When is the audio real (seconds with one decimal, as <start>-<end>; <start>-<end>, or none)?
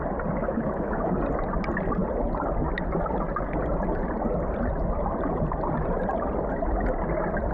0.0-0.4; 1.1-7.5